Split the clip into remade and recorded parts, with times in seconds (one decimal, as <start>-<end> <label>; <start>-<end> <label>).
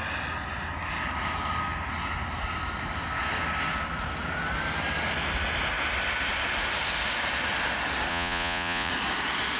0.0-8.1 recorded; 8.1-8.9 remade; 8.9-9.6 recorded